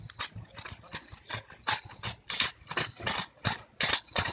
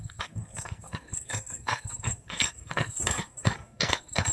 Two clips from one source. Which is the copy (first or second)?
second